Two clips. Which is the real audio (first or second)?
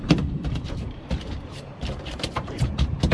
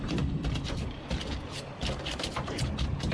second